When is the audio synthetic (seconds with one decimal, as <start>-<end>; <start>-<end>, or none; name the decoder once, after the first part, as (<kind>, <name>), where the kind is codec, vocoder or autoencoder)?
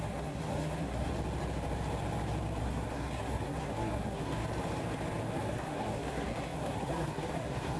0.0-1.1 (codec, SNAC); 2.6-4.4; 5.4-7.8